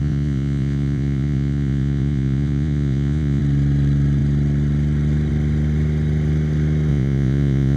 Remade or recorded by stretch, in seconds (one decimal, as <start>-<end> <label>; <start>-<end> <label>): 0.0-3.4 remade; 3.4-6.9 recorded; 6.9-7.8 remade